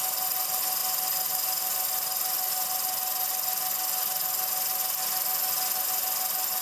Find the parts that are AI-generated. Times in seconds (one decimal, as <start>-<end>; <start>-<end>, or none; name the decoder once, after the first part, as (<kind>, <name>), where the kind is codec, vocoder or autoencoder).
none